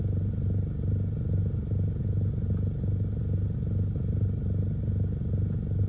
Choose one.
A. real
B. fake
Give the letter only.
A